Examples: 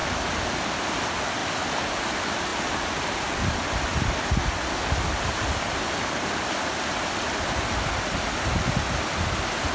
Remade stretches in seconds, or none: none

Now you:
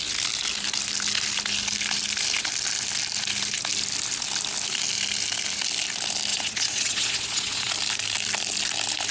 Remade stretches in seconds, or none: 6.3-7.7 (vocoder, Vocos)